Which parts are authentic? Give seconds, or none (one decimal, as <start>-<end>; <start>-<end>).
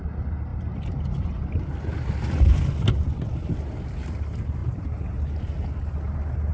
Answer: 0.0-6.5